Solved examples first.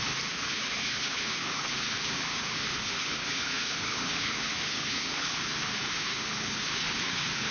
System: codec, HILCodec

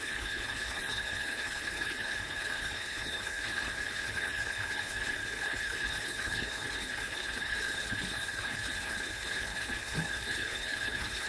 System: codec, HILCodec